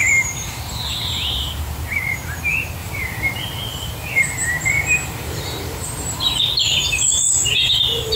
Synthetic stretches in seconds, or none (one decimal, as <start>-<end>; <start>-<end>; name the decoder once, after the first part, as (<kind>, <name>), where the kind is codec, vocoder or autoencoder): 0.0-2.0 (vocoder, BigVGAN v2); 2.8-6.4